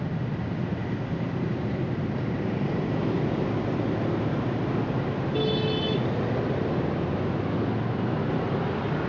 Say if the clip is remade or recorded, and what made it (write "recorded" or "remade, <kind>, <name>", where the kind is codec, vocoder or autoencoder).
recorded